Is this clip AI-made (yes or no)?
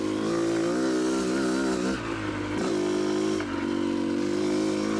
no